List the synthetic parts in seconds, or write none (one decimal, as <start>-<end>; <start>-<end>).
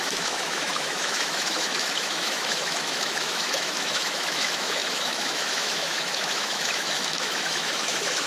0.0-8.3